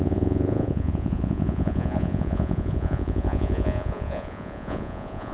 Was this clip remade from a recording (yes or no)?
yes